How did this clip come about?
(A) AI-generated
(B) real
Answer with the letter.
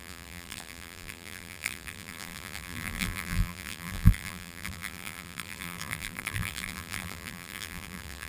A